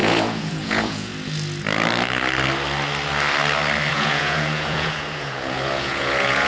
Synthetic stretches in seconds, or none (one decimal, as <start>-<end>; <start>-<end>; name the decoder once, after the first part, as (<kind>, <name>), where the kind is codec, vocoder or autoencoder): 0.0-1.1 (vocoder, Vocos); 3.9-6.5